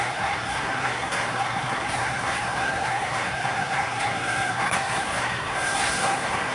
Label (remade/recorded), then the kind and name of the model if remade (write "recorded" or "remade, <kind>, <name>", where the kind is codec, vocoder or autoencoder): remade, codec, SNAC